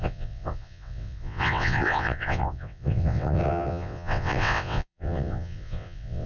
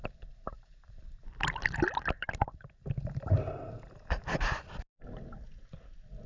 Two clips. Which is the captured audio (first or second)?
second